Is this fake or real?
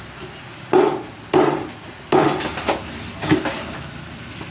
real